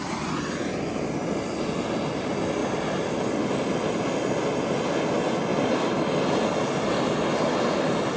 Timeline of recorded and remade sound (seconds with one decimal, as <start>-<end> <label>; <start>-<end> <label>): 0.0-8.2 recorded